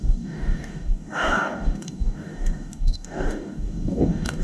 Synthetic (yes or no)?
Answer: yes